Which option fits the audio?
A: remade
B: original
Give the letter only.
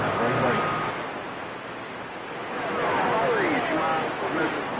B